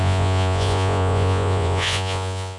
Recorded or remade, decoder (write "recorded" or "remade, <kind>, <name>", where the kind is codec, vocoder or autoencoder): remade, vocoder, Vocos